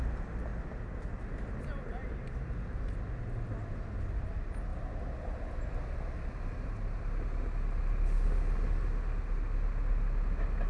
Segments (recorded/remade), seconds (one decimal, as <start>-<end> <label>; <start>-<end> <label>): 0.0-10.7 recorded